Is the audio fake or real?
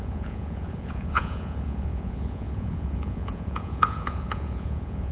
fake